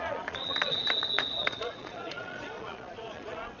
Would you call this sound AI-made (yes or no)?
yes